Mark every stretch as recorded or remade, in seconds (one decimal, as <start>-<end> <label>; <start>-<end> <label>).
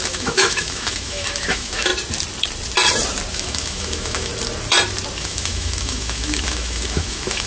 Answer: 0.0-1.9 remade; 1.9-3.3 recorded; 3.3-4.3 remade; 4.3-5.2 recorded; 5.2-7.5 remade